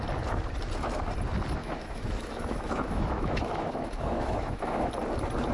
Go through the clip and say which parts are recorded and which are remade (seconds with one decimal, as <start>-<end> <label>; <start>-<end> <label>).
0.0-1.6 recorded; 1.6-4.9 remade; 4.9-5.5 recorded

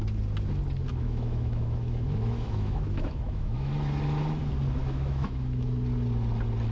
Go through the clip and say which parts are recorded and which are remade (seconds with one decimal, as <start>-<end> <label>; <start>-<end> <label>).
0.0-0.9 recorded; 0.9-3.7 remade; 3.7-4.8 recorded; 4.8-5.7 remade; 5.7-6.7 recorded

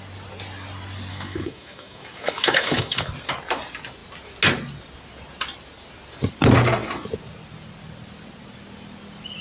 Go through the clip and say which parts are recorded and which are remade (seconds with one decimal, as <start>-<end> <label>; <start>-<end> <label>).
0.0-1.1 recorded; 1.1-3.1 remade; 3.1-9.4 recorded

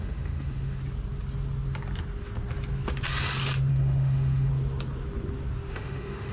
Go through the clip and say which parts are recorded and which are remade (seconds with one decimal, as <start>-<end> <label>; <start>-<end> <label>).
0.0-0.8 remade; 0.8-3.7 recorded; 3.7-4.5 remade; 4.5-5.7 recorded; 5.7-6.3 remade